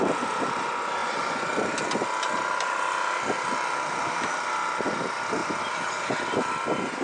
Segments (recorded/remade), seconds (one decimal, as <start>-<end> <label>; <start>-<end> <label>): 0.0-1.0 recorded; 1.0-1.5 remade; 1.5-7.0 recorded